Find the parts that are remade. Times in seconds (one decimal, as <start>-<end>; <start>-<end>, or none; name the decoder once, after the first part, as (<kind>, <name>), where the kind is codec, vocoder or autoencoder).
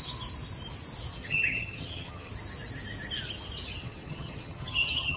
1.1-2.3 (vocoder, HiFi-GAN); 3.8-5.2